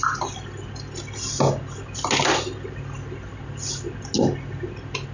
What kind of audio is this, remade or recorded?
recorded